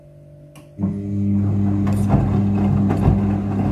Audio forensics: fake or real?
real